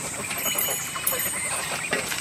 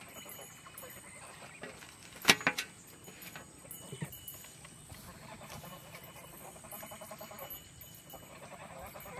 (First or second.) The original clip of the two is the second